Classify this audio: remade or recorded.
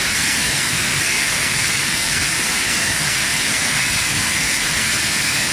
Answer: remade